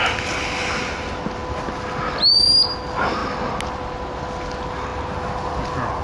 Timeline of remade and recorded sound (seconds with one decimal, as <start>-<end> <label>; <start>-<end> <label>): 0.0-6.0 recorded